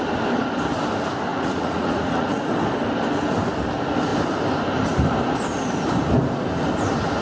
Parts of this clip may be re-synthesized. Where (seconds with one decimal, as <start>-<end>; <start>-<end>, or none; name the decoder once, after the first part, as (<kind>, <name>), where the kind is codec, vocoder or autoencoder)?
1.3-2.5 (vocoder, Vocos)